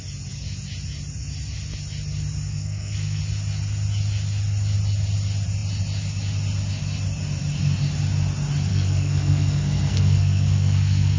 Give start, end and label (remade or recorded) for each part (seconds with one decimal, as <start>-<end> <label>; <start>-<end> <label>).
0.0-2.5 recorded; 2.5-3.2 remade; 3.2-8.7 recorded; 8.7-11.2 remade